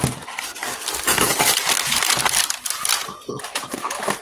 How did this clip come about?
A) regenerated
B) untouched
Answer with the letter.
B